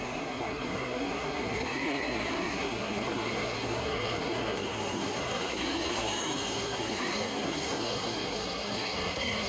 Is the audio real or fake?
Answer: fake